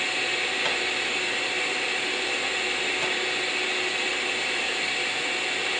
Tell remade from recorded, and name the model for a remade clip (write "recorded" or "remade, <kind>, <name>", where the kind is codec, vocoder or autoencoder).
recorded